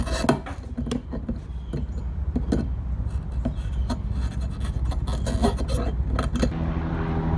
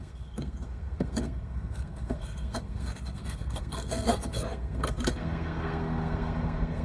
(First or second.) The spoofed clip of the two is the second